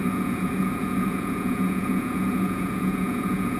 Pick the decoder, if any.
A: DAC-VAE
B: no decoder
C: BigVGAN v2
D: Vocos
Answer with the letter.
D